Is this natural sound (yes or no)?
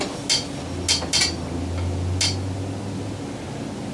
yes